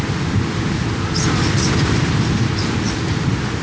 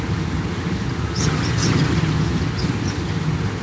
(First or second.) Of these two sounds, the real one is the first